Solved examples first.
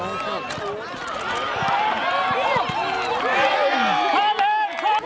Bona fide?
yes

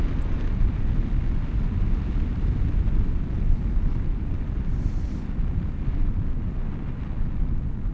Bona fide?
yes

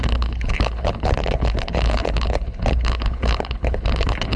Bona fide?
no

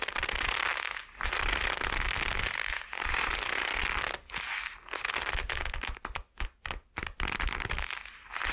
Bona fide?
yes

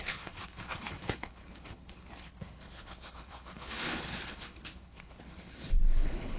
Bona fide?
no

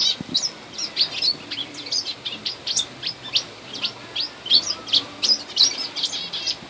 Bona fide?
yes